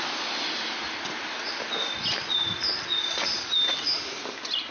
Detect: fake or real real